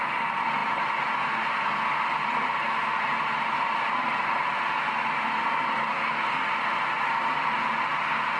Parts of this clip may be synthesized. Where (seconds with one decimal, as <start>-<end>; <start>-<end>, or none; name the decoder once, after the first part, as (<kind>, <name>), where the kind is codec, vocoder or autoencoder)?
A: none